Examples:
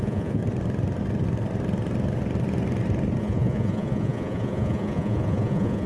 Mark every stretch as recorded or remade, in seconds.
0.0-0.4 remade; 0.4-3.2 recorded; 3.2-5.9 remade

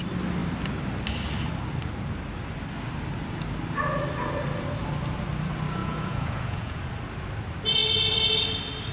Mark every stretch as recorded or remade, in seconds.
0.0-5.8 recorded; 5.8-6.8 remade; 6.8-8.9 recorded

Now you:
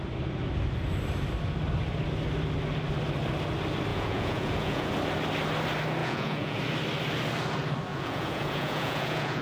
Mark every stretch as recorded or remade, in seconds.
0.0-3.9 recorded; 3.9-4.9 remade; 4.9-6.0 recorded; 6.0-6.6 remade; 6.6-7.9 recorded; 7.9-9.4 remade

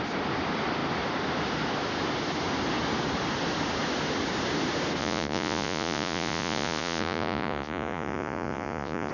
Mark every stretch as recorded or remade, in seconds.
0.0-5.0 recorded; 5.0-9.1 remade